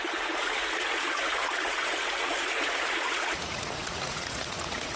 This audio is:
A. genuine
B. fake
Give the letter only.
B